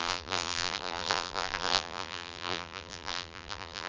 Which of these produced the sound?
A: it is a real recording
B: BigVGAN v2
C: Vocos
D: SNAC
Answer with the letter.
B